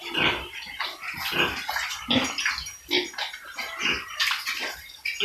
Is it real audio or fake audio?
real